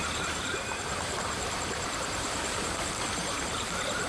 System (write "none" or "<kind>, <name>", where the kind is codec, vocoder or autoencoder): vocoder, BigVGAN v2